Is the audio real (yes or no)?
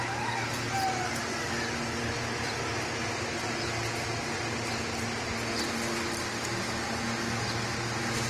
yes